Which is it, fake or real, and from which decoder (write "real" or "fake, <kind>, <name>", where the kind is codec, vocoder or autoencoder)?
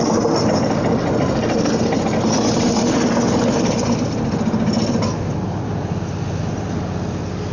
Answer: real